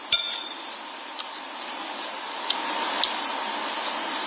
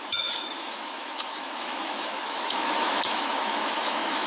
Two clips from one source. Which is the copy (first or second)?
second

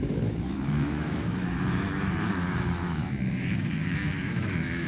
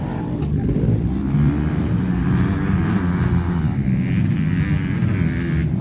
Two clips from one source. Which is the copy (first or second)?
first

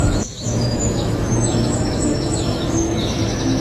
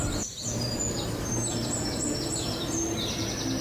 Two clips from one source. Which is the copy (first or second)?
first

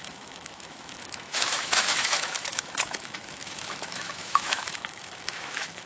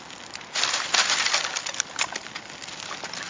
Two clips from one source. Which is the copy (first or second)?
first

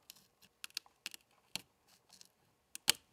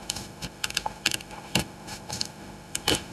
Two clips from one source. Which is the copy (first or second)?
second